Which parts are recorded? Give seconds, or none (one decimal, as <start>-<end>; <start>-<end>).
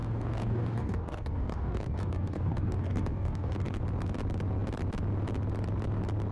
3.8-6.3